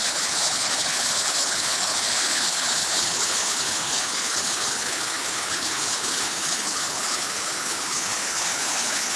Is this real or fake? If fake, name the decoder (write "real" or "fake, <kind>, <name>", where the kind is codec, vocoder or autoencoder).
fake, codec, HILCodec